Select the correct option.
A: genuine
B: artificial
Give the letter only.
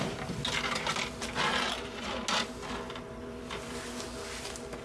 A